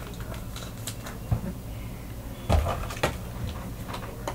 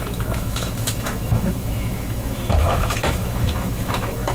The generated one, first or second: second